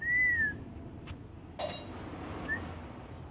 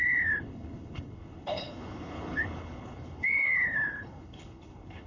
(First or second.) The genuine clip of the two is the first